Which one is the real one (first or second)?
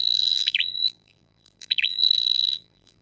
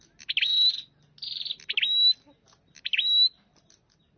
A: second